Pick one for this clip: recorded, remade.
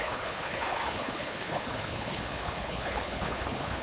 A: remade